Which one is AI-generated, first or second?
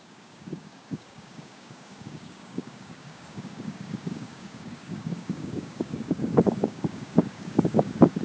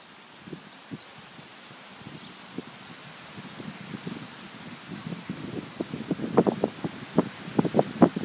first